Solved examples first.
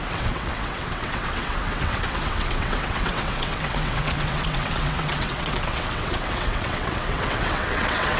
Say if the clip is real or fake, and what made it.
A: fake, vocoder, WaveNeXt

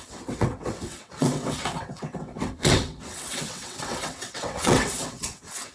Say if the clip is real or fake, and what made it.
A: fake, vocoder, WaveNeXt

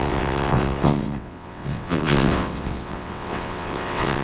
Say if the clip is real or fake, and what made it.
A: fake, vocoder, WaveNeXt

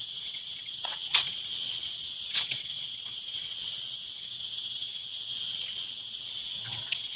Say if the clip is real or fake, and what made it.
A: fake, vocoder, WaveNeXt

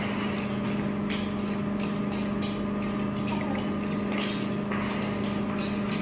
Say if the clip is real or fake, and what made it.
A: real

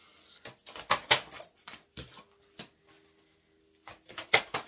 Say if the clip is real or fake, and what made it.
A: real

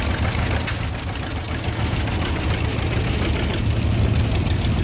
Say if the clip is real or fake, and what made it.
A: real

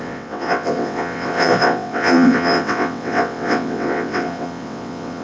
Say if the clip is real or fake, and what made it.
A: fake, vocoder, WaveNeXt